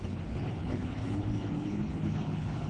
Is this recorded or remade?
remade